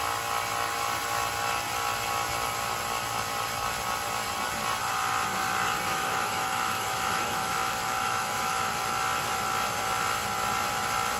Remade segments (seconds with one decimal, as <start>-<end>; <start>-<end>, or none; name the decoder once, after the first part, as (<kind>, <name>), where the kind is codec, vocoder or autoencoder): 5.9-8.7 (autoencoder, DAC-VAE)